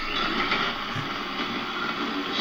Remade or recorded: recorded